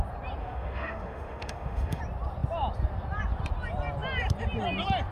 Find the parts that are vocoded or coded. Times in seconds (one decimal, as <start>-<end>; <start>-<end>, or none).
0.4-2.0